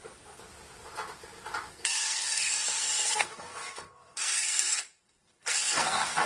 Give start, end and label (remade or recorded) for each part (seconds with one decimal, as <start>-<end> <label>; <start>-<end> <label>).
0.0-0.5 remade; 0.5-1.7 recorded; 1.7-6.3 remade